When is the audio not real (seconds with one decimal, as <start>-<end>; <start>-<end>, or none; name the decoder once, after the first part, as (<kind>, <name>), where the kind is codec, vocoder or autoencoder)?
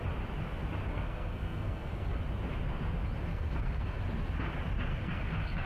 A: 0.9-2.2 (codec, SNAC); 3.3-4.0; 4.9-5.7